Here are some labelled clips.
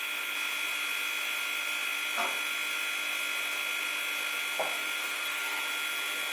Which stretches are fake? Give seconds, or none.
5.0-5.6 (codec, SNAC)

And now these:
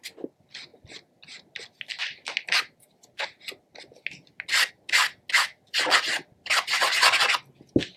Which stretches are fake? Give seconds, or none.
none